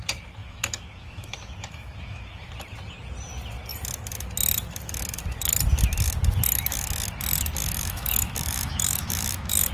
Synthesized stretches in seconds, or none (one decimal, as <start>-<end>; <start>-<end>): 0.4-2.5; 7.6-9.7